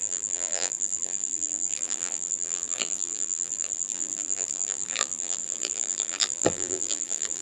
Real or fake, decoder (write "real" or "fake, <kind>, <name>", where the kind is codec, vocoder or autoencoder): fake, vocoder, BigVGAN v2